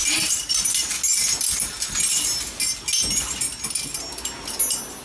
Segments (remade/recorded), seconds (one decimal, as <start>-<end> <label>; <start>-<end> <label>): 0.0-0.7 remade; 0.7-5.0 recorded